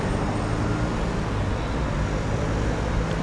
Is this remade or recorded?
recorded